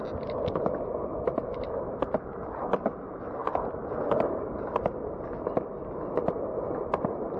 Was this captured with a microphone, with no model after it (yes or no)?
yes